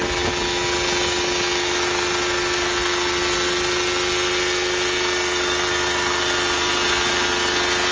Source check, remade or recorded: recorded